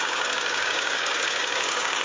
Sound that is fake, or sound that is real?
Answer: fake